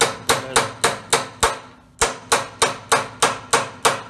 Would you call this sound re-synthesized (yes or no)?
no